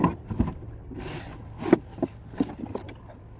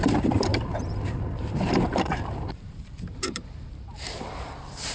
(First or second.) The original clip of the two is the first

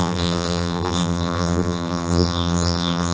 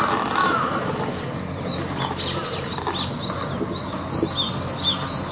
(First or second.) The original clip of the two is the second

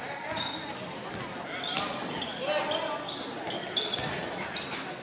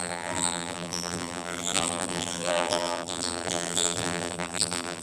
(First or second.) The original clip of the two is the first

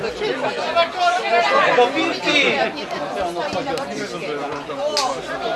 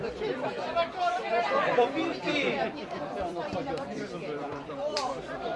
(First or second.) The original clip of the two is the first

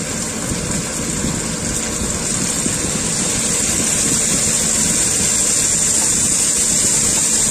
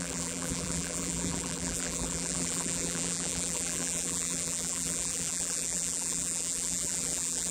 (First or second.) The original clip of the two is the first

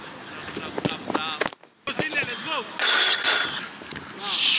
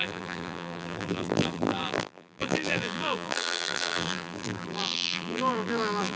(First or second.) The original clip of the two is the first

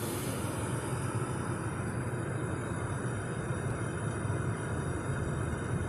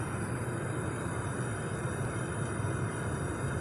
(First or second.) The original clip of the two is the second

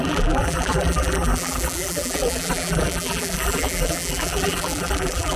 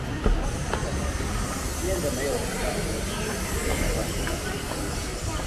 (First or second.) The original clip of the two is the second